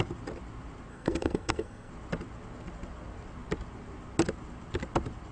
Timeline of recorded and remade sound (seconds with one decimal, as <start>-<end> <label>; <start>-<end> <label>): 0.0-0.9 recorded; 0.9-1.9 remade; 1.9-5.3 recorded